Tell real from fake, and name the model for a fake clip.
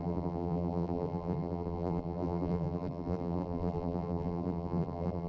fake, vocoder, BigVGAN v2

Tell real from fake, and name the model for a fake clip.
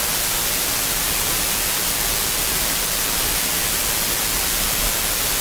real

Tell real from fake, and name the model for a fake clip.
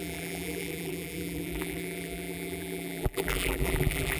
fake, vocoder, BigVGAN v2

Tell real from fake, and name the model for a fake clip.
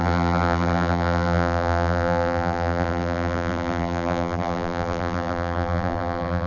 fake, vocoder, BigVGAN v2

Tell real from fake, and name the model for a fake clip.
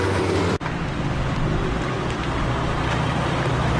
fake, vocoder, BigVGAN v2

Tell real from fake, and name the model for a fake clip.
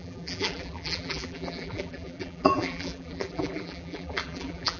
fake, vocoder, BigVGAN v2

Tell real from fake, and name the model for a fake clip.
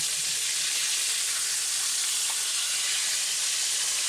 real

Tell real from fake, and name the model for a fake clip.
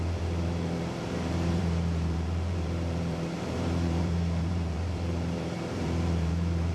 fake, vocoder, BigVGAN v2